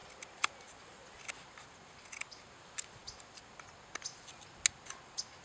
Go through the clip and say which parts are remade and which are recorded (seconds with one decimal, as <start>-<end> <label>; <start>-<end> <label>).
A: 0.0-5.4 recorded